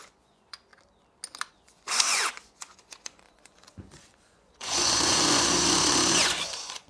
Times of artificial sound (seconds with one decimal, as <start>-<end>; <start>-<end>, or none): 0.0-0.7; 1.5-6.9